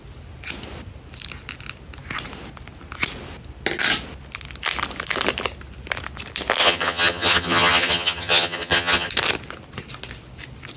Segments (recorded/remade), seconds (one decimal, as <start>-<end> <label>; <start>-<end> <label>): 0.0-6.6 recorded; 6.6-9.1 remade; 9.1-10.8 recorded